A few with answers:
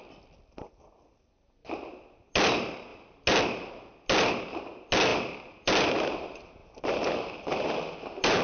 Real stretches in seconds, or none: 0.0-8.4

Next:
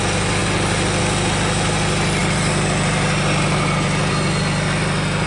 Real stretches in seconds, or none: 0.0-5.3

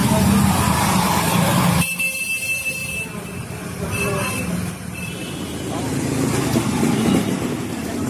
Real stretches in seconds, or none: 0.0-2.8; 3.8-8.1

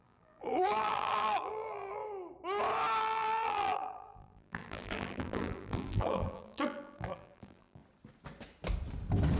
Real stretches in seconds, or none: 2.0-3.0; 7.8-9.4

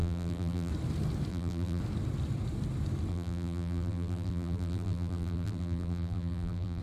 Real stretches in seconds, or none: 0.7-1.3; 1.8-3.1

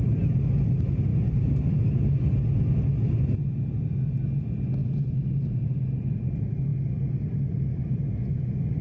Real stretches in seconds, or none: 0.0-1.1; 1.8-4.8; 5.8-8.8